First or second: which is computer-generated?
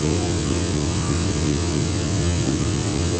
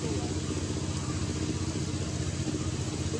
first